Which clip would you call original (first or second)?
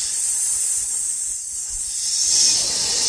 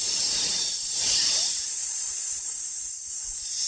first